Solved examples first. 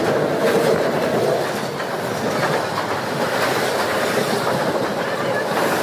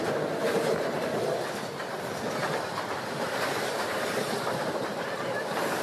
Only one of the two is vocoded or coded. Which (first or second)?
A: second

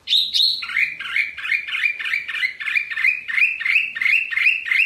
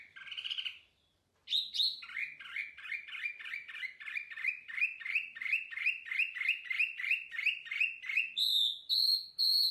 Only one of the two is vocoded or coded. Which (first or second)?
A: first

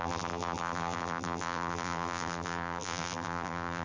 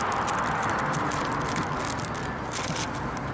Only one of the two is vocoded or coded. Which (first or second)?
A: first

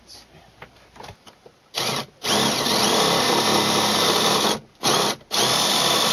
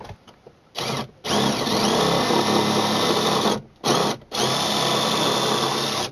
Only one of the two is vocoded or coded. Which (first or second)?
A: first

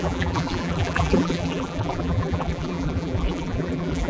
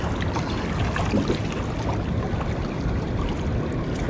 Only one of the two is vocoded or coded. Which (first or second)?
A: first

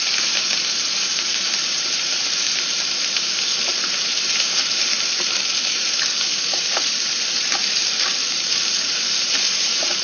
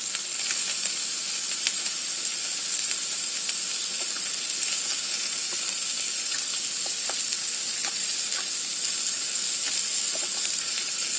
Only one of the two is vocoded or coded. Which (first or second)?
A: first